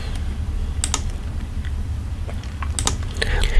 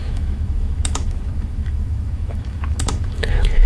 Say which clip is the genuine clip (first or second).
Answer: first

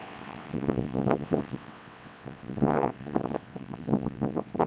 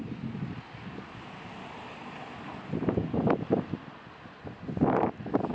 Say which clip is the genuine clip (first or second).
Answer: second